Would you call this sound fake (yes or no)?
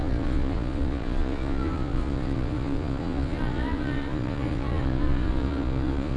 yes